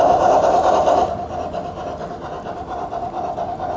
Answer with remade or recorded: recorded